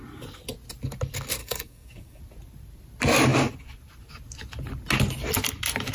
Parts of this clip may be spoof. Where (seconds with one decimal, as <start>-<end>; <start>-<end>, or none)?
1.4-2.2

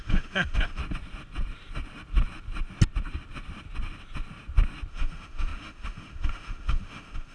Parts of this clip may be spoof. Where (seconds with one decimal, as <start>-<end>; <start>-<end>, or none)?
0.0-0.8; 4.9-7.3

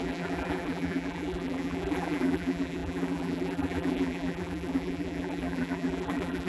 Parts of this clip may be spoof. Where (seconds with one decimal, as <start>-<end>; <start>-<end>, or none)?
0.0-6.5